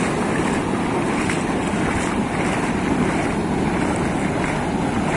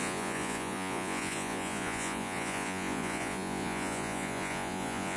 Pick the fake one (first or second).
second